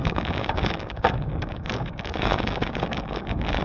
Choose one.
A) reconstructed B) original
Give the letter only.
A